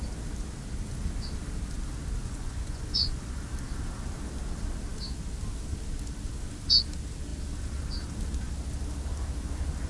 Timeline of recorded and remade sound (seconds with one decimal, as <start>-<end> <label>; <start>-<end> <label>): 0.0-2.2 recorded; 2.2-3.2 remade; 3.2-9.9 recorded